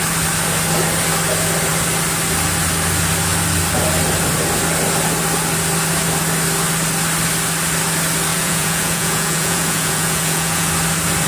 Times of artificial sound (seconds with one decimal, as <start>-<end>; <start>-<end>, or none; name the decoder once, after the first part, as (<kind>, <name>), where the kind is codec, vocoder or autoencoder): 8.3-10.7 (vocoder, Vocos)